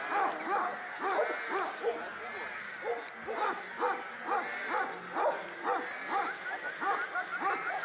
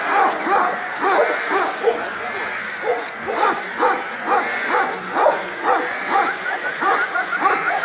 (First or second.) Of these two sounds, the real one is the first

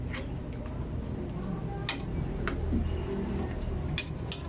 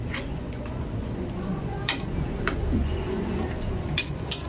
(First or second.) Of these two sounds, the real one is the first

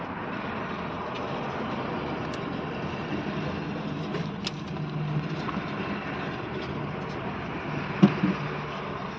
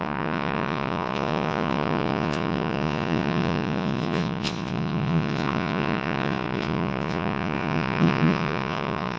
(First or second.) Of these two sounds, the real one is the first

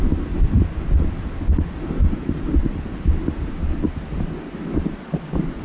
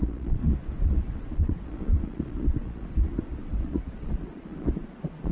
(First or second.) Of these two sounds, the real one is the first